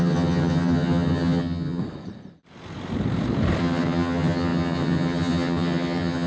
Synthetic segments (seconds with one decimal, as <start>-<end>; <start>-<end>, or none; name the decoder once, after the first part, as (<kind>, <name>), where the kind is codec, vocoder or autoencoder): 0.0-1.8 (vocoder, HiFi-GAN); 3.6-6.3